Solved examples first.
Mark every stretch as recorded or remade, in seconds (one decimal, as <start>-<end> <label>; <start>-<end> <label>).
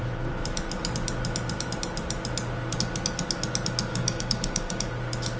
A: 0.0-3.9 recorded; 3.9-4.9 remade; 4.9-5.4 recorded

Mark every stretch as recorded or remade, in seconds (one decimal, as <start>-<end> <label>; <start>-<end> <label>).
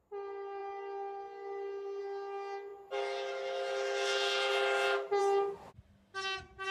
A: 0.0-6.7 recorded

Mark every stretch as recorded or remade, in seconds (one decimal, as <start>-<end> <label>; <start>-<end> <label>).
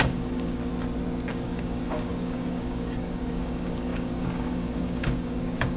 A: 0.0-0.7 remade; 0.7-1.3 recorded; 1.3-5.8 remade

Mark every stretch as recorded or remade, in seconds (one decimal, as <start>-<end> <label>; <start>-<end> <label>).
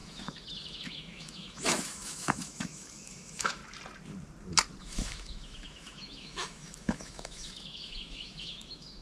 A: 0.0-3.6 remade; 3.6-4.8 recorded; 4.8-9.0 remade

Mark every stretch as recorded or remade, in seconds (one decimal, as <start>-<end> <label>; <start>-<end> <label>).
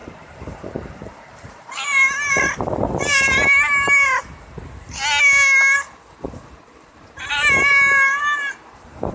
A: 0.0-3.4 remade; 3.4-6.9 recorded; 6.9-9.1 remade